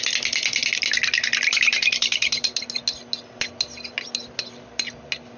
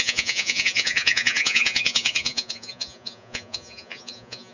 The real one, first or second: first